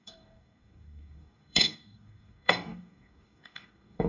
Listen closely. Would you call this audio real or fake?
fake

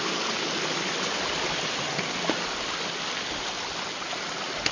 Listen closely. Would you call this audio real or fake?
real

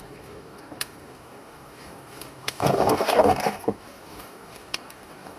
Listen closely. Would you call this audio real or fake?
fake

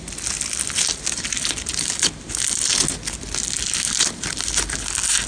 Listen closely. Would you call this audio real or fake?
real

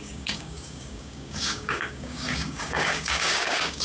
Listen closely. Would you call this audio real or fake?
fake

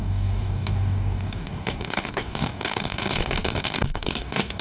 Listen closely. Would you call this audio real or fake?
fake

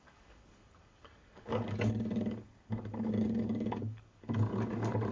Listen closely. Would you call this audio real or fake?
fake